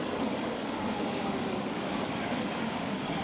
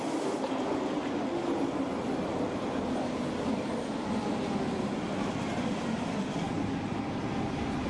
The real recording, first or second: second